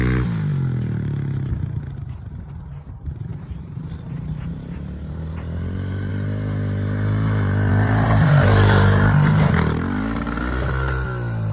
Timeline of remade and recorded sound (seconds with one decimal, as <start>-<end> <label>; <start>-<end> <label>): 0.0-3.3 recorded; 3.3-6.1 remade; 6.1-7.7 recorded; 7.7-9.3 remade; 9.3-11.5 recorded

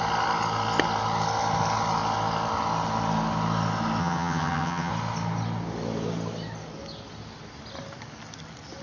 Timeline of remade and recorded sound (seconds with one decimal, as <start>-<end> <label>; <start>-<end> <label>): 0.0-4.0 recorded; 4.0-4.9 remade; 4.9-8.8 recorded